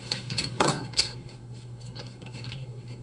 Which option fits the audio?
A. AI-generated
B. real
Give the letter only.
A